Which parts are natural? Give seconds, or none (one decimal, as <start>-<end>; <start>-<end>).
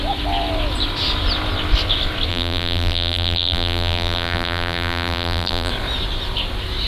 0.0-2.3; 5.7-6.9